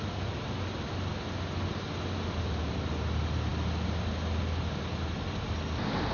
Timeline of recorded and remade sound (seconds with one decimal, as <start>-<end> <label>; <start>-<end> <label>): 0.0-6.1 recorded